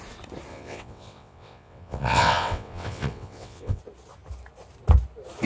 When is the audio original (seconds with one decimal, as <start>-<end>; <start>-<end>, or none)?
0.0-0.5; 3.8-5.5